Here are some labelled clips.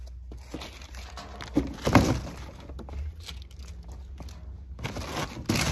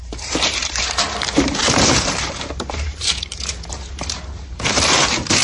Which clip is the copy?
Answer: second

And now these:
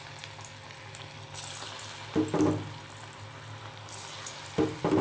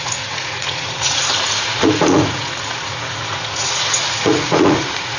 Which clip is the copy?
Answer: second